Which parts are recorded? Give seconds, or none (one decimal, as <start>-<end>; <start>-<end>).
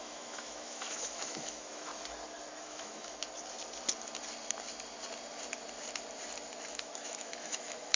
1.9-2.6; 3.2-6.7